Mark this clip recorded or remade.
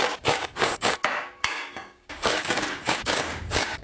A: remade